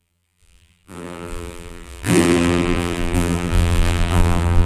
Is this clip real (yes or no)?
no